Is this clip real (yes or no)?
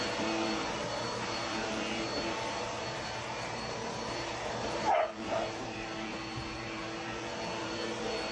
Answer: no